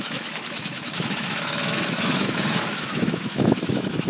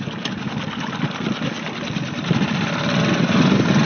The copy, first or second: first